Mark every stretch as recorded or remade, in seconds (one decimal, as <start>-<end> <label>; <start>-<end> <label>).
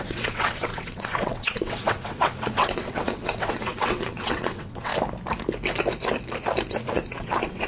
0.0-4.9 remade; 4.9-6.7 recorded; 6.7-7.7 remade